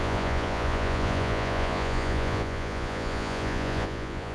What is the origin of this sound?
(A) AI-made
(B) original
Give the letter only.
A